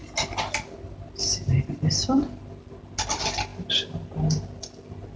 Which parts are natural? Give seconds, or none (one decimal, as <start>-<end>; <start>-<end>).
0.0-5.2